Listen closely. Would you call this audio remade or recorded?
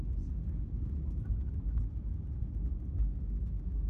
recorded